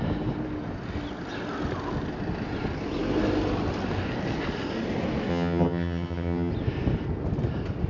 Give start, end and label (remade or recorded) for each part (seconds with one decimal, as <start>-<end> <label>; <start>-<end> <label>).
0.0-5.3 recorded; 5.3-6.5 remade; 6.5-7.9 recorded